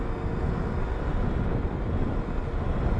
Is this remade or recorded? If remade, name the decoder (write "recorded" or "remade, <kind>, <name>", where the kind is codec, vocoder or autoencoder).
recorded